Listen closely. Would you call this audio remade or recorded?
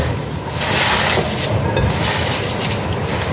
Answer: recorded